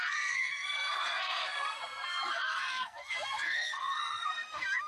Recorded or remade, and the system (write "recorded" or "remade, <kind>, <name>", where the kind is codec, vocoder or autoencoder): remade, codec, SNAC